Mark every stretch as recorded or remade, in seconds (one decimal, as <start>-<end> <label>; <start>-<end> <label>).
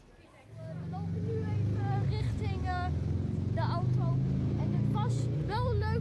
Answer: 0.0-6.0 recorded